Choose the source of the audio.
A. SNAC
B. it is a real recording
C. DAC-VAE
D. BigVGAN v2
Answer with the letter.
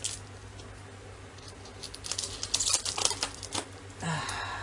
B